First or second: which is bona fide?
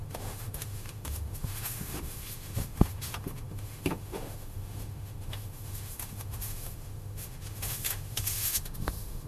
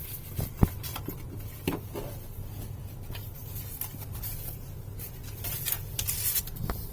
second